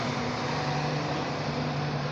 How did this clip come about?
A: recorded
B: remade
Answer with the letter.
B